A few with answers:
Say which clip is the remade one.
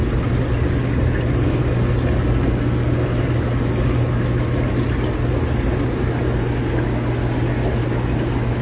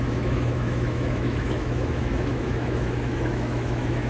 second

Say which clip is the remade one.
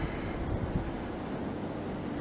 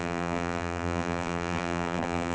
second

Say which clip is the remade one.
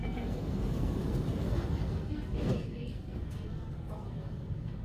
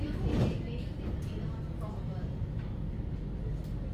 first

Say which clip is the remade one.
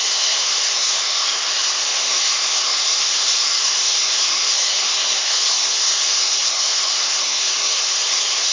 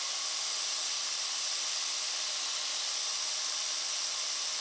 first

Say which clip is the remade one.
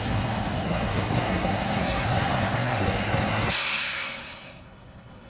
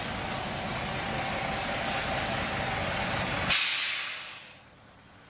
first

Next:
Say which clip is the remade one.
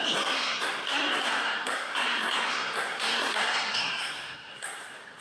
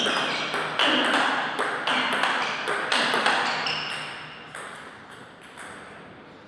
first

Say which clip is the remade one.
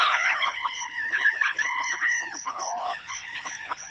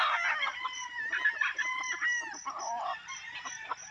first